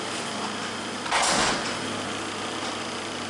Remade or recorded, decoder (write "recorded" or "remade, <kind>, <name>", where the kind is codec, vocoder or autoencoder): recorded